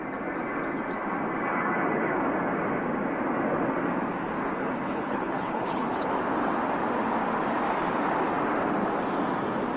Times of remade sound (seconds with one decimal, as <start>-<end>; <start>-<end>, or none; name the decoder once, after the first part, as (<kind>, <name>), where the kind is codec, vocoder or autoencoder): 4.4-6.1 (codec, HILCodec)